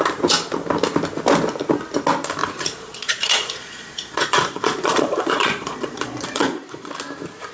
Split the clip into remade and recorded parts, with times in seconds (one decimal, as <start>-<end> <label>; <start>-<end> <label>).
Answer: 0.0-2.4 recorded; 2.4-6.9 remade; 6.9-7.5 recorded